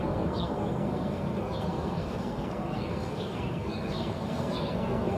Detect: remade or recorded remade